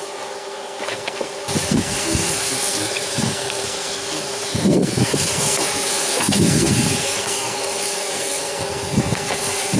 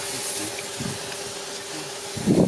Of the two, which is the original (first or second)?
second